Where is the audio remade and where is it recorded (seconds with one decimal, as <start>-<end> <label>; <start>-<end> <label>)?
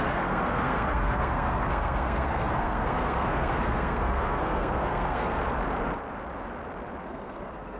0.0-5.4 remade; 5.4-7.0 recorded; 7.0-7.8 remade